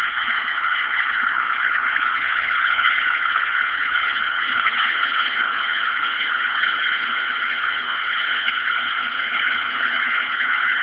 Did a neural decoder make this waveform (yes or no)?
yes